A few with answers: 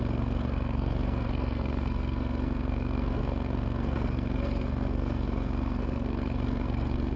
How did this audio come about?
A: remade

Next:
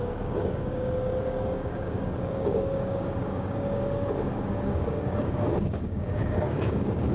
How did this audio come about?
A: remade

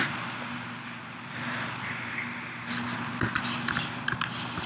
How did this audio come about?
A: recorded